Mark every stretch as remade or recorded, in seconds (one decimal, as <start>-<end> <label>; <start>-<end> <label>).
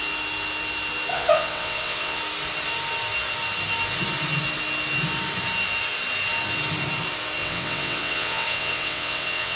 0.0-1.1 recorded; 1.1-2.2 remade; 2.2-7.4 recorded; 7.4-9.6 remade